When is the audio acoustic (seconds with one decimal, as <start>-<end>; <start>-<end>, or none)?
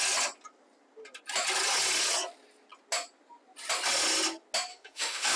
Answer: 0.0-4.7